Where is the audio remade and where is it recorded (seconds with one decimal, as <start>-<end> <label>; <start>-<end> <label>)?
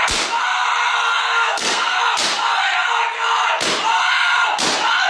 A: 0.0-1.2 recorded; 1.2-2.0 remade; 2.0-5.1 recorded